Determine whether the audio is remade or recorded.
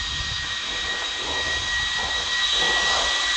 recorded